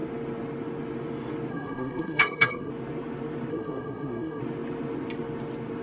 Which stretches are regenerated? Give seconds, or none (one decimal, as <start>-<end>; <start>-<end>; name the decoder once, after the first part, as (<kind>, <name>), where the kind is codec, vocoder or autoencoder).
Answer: 1.5-2.7 (codec, SNAC); 3.5-4.4